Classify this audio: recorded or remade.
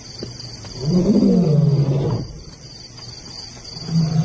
recorded